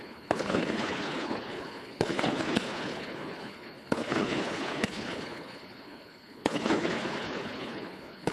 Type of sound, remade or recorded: remade